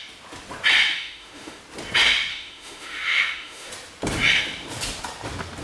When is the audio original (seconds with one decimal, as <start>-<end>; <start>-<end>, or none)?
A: 0.0-0.9; 1.6-2.3; 3.7-5.6